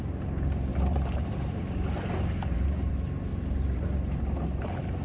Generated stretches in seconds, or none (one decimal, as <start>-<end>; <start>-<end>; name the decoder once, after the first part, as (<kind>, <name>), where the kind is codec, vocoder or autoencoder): 0.7-2.9 (vocoder, BigVGAN v2); 3.3-4.2